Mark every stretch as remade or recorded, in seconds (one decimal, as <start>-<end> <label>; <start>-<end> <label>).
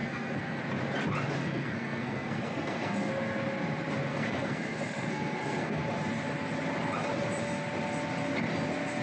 0.0-0.6 remade; 0.6-1.4 recorded; 1.4-3.1 remade; 3.1-4.1 recorded; 4.1-5.8 remade; 5.8-9.0 recorded